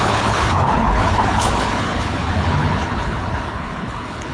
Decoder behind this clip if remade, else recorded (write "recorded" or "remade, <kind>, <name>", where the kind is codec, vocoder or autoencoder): remade, codec, HILCodec